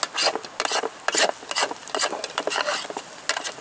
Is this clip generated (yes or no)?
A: no